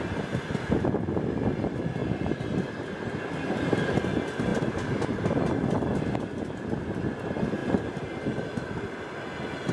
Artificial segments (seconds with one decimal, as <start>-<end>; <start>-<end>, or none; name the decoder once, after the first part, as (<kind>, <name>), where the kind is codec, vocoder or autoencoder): none